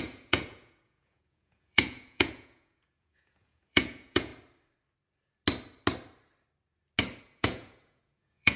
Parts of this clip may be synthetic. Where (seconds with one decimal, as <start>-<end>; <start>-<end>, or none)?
0.0-4.3; 7.2-8.6